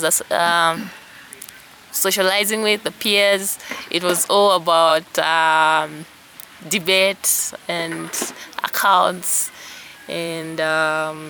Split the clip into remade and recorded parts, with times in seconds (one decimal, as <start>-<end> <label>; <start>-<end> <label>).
0.0-4.9 recorded; 4.9-5.8 remade; 5.8-9.9 recorded; 9.9-11.3 remade